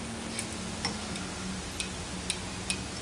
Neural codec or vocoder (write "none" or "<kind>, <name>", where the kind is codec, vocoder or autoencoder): none